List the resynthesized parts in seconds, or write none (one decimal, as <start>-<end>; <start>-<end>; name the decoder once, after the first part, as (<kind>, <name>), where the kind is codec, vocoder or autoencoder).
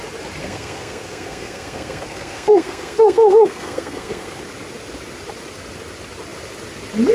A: 0.4-4.4 (codec, SNAC)